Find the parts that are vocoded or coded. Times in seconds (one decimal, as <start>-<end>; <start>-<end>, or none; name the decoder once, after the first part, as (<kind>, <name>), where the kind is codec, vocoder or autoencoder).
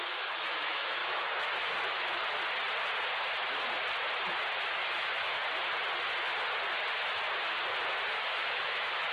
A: 0.0-2.2 (autoencoder, DAC-VAE); 4.7-5.4; 8.2-9.1